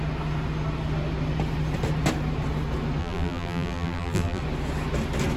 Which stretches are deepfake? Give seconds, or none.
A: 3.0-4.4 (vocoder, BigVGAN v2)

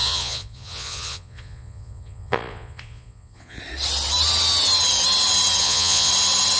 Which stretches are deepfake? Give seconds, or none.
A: 0.0-3.6 (vocoder, Vocos); 5.6-6.1

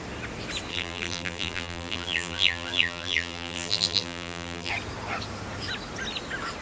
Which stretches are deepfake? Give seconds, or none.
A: 0.7-4.7 (vocoder, BigVGAN v2)

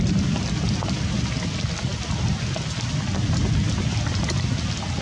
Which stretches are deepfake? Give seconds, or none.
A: none

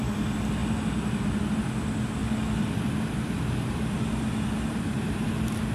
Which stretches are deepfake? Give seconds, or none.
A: 2.2-5.3 (vocoder, BigVGAN v2)

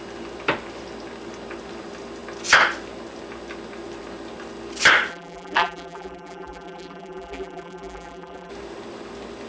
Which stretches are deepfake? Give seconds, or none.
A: 5.1-8.5 (vocoder, BigVGAN v2)

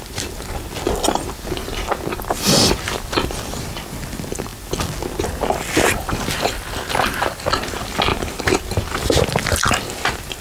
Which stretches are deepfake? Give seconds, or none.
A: none

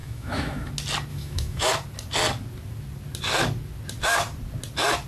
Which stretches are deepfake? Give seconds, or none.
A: 0.0-0.7 (autoencoder, DAC-VAE); 1.1-1.7